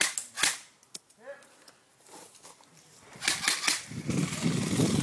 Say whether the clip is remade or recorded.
recorded